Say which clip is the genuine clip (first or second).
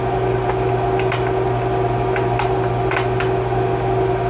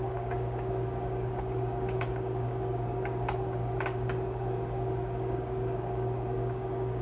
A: first